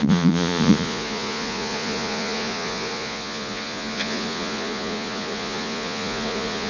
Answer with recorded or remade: remade